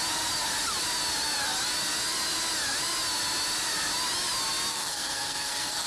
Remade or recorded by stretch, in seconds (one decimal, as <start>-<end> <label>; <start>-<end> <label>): 0.0-4.7 recorded; 4.7-5.9 remade